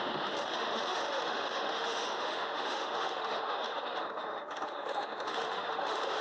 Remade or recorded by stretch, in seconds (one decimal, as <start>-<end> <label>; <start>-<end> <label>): 0.0-6.2 remade